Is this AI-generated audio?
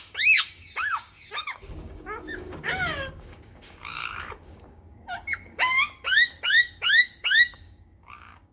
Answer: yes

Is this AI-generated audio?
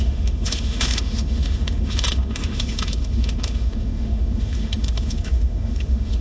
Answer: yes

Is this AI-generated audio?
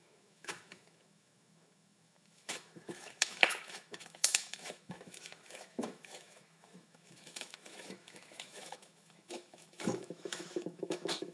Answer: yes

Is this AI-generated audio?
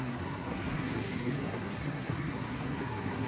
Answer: yes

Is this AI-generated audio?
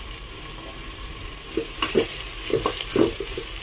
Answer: no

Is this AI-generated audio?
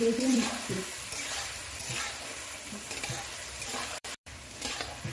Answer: yes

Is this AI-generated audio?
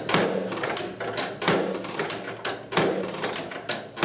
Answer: no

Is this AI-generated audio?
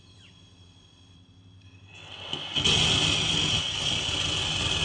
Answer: no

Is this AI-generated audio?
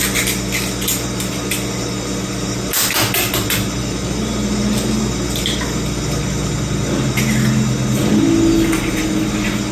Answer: no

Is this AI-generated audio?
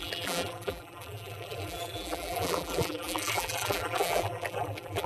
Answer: yes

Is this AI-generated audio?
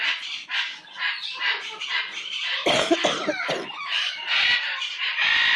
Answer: no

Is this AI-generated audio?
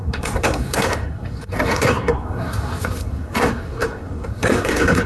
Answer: yes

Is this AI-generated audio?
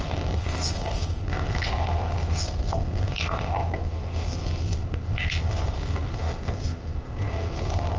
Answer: yes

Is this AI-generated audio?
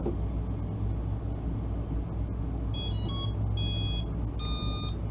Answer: no